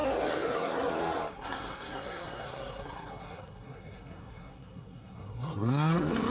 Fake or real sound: fake